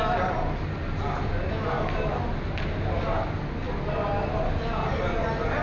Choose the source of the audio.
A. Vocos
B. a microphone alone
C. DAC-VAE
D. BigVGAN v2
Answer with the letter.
B